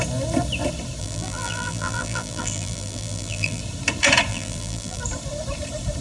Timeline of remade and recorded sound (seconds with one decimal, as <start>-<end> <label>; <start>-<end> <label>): 0.0-1.0 recorded; 1.0-3.6 remade; 3.6-4.3 recorded; 4.3-5.0 remade; 5.0-6.0 recorded